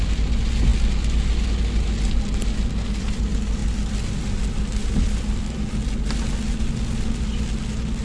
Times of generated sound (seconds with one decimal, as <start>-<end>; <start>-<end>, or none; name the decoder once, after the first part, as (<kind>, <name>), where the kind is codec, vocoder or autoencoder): none